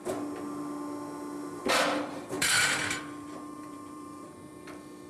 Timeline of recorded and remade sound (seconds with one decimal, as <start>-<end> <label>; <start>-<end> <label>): 0.0-1.4 recorded; 1.4-4.5 remade; 4.5-5.1 recorded